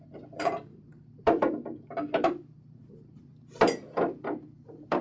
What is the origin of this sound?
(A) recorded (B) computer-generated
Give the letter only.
B